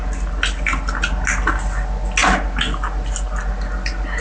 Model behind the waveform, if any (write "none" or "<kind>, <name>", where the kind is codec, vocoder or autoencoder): none